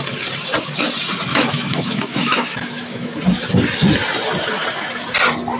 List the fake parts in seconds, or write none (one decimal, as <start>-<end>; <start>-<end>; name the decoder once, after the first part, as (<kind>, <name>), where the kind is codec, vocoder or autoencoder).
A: 1.3-3.2 (autoencoder, DAC-VAE)